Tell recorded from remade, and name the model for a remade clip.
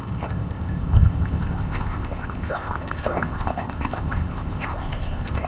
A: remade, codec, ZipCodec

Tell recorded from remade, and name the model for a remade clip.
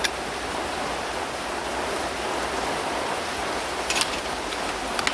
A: recorded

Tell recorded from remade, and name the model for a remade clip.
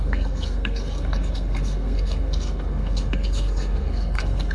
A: remade, codec, SNAC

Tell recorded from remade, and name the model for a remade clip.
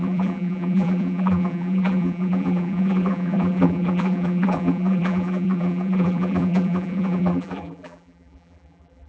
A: remade, vocoder, BigVGAN v2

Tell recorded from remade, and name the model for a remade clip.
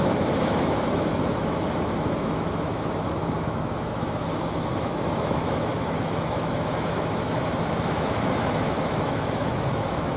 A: remade, autoencoder, DAC-VAE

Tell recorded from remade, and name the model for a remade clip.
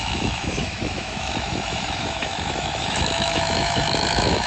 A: remade, autoencoder, DAC-VAE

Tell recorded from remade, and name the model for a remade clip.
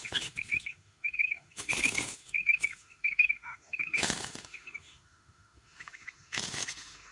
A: remade, autoencoder, DAC-VAE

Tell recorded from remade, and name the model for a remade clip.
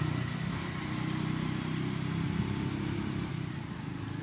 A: recorded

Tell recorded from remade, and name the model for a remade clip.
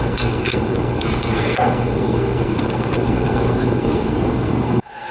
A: remade, codec, SNAC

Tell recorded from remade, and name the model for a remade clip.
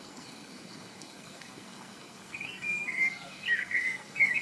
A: remade, codec, SNAC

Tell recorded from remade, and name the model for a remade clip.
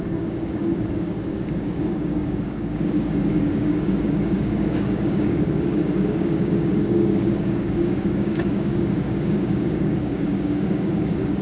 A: remade, codec, DAC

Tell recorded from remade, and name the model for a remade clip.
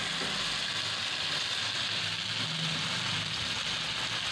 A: recorded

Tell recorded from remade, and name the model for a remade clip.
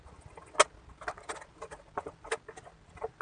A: recorded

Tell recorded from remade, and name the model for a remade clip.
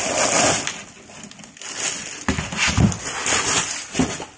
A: recorded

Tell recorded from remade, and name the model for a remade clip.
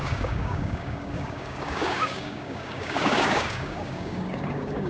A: remade, codec, DAC